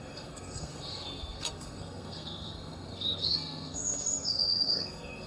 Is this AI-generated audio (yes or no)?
yes